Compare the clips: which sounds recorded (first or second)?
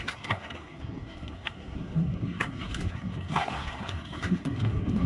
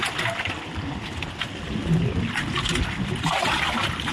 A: second